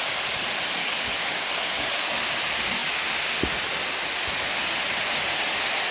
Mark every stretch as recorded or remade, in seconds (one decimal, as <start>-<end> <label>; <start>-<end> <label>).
0.0-0.8 recorded; 0.8-2.1 remade; 2.1-5.9 recorded